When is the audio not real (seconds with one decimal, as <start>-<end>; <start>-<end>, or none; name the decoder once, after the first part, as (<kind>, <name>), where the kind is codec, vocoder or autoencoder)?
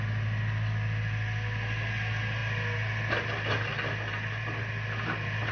none